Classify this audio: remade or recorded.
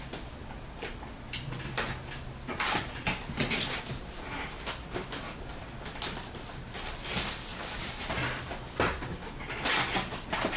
recorded